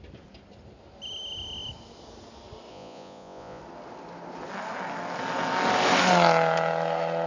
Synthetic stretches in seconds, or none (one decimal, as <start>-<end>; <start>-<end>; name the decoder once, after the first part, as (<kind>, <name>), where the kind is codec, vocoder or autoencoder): 2.7-3.6 (vocoder, Vocos)